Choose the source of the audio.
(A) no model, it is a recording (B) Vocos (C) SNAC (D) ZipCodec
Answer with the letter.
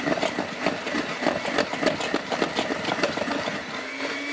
A